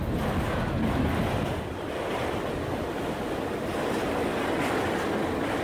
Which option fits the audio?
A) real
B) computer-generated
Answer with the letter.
A